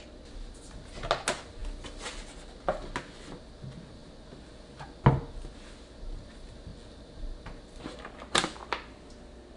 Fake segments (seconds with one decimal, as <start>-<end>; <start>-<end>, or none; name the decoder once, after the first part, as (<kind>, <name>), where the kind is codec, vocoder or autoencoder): none